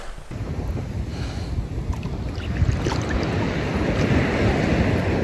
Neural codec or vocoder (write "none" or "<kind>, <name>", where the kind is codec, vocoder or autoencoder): none